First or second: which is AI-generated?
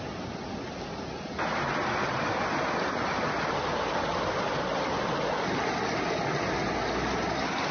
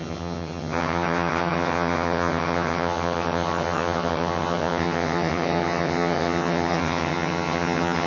second